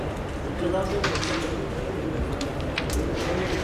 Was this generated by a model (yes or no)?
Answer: no